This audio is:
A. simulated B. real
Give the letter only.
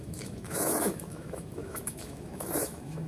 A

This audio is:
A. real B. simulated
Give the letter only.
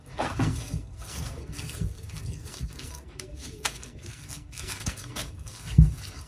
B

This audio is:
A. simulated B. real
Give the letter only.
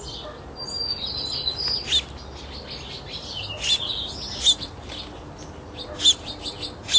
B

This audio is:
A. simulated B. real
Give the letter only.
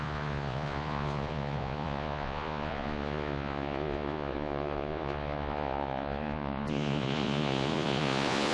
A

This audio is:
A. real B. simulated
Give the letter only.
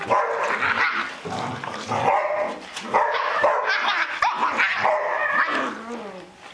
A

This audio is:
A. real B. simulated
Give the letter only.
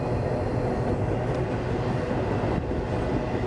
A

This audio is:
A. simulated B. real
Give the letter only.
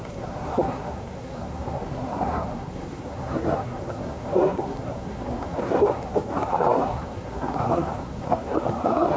A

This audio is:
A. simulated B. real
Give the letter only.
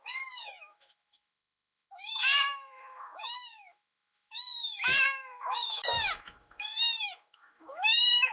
A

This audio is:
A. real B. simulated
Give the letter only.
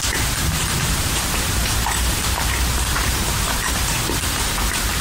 B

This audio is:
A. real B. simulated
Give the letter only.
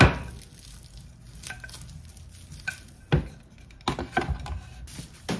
A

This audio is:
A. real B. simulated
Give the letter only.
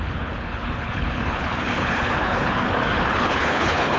B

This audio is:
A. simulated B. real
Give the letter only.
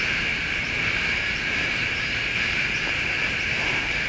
A